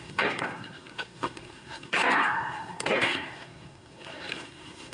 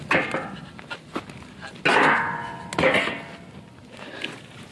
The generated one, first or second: first